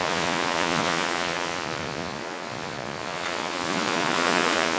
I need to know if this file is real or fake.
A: fake